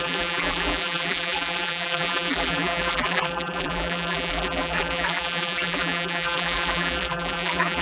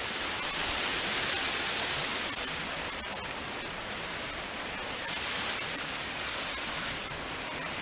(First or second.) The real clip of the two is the second